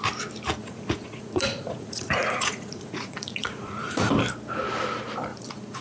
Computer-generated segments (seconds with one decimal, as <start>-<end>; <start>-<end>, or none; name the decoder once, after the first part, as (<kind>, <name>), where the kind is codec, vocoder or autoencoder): 0.6-4.1 (vocoder, Vocos); 5.3-5.8